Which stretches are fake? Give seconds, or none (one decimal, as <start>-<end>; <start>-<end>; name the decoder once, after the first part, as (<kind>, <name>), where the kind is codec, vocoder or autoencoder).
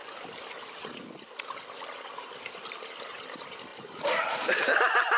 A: none